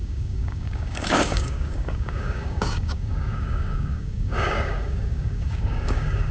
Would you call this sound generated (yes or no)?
yes